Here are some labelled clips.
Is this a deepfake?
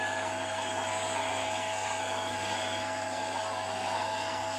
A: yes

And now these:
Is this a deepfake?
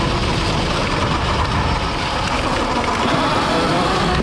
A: no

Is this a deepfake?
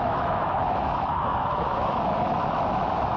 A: yes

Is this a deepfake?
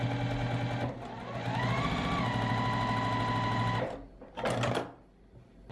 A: no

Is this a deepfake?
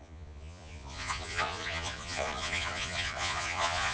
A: yes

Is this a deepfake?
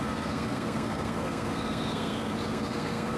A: yes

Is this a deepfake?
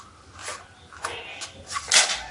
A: no